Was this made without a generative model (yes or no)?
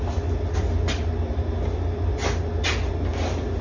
yes